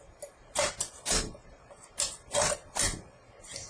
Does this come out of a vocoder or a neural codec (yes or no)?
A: no